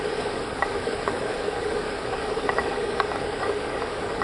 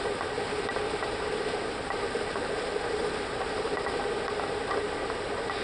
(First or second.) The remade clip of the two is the first